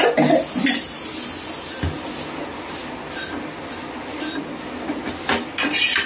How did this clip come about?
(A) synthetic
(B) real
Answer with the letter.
B